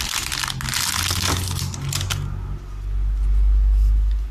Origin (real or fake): real